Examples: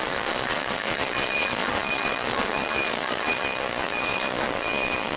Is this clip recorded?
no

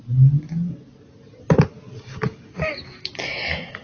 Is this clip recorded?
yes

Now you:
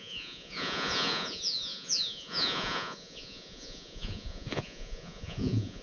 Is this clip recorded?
no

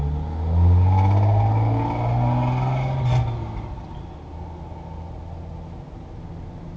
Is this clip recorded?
yes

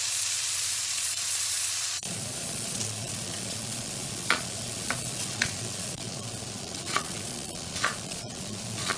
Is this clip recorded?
no